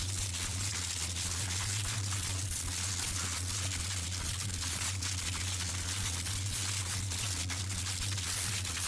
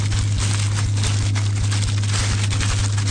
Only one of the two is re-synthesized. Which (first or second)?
first